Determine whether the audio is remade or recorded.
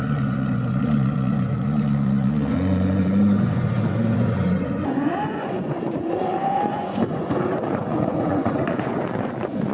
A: remade